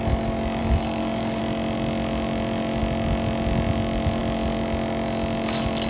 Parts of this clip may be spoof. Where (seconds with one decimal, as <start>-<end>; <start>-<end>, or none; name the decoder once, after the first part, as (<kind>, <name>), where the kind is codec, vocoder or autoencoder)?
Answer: 0.6-1.4 (codec, DAC)